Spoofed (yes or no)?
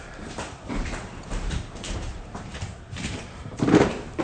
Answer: yes